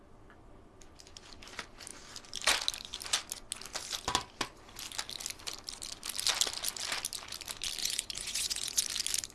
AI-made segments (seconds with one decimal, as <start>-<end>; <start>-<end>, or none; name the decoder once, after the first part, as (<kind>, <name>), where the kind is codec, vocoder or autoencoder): 7.8-8.8 (vocoder, Vocos)